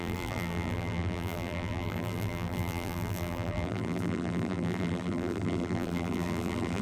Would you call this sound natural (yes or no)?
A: no